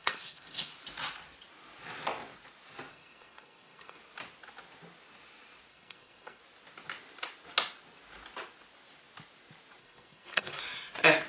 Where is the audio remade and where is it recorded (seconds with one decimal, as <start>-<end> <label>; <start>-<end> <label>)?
0.0-0.7 remade; 0.7-2.9 recorded; 2.9-4.0 remade; 4.0-5.7 recorded; 5.7-6.4 remade; 6.4-9.8 recorded; 9.8-10.6 remade; 10.6-11.3 recorded